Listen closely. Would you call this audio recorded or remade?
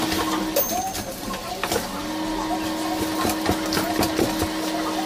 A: recorded